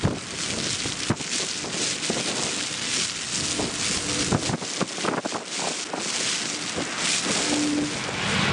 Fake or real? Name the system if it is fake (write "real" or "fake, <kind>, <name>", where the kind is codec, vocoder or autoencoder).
real